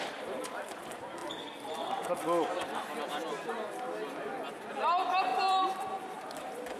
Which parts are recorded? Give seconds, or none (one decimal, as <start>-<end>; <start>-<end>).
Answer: 0.0-5.3